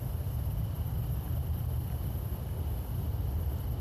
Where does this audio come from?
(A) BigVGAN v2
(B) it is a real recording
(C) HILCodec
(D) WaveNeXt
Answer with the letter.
B